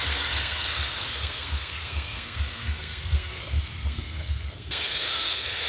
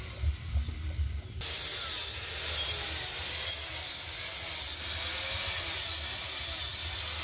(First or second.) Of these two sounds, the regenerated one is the first